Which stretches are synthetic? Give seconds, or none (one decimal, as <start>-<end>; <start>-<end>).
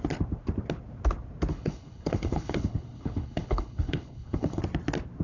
1.5-4.6